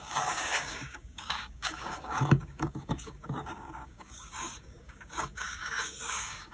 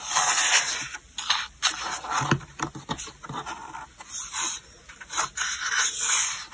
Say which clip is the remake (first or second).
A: first